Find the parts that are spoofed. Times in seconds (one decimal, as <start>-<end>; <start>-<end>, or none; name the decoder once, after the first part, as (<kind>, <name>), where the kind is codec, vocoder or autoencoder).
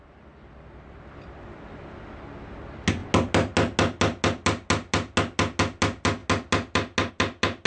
none